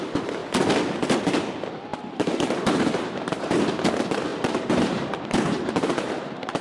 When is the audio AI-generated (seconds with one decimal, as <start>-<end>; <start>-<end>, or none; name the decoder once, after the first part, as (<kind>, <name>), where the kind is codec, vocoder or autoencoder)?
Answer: 1.9-3.8 (vocoder, BigVGAN v2); 4.3-6.6